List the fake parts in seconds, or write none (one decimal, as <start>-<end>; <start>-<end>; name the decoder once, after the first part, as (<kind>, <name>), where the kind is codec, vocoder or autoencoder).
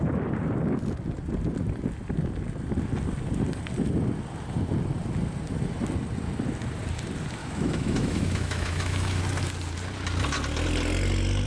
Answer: 7.4-9.2 (autoencoder, DAC-VAE)